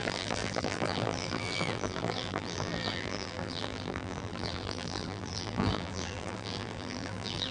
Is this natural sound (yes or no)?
no